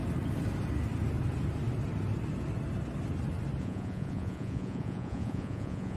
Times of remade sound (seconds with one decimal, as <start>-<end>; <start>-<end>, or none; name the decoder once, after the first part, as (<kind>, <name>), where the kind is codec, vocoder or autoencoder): 3.6-6.0 (vocoder, Vocos)